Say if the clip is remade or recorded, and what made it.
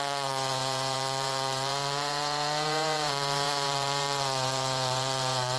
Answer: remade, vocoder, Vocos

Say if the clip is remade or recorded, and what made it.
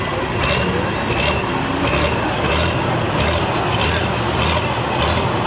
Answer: recorded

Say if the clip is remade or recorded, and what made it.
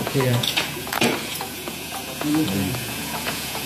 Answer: remade, vocoder, Vocos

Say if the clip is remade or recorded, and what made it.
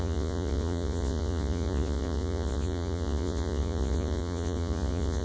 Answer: remade, vocoder, Vocos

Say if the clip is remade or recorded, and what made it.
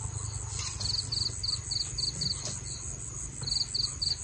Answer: recorded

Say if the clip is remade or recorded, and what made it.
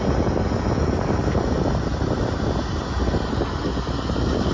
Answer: recorded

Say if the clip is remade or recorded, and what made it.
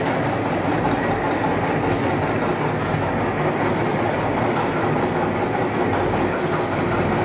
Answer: recorded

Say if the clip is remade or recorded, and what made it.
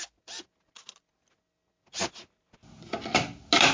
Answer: recorded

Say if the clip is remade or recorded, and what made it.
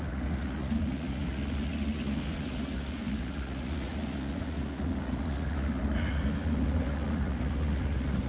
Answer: remade, vocoder, Vocos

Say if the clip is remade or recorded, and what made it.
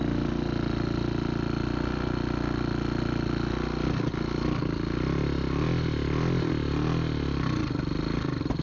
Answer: recorded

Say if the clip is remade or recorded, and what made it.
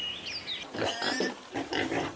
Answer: recorded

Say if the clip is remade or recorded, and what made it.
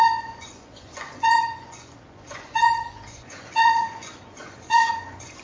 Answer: remade, vocoder, Vocos